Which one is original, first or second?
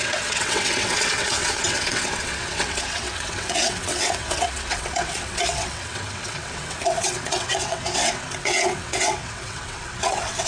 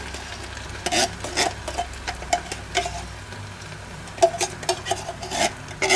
second